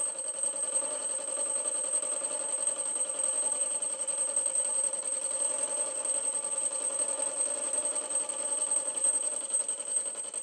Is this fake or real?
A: real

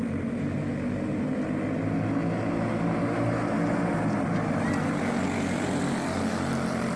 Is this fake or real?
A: real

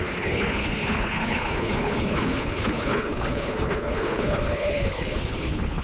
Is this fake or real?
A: fake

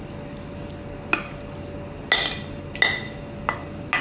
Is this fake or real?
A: real